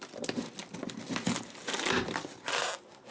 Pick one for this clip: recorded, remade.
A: recorded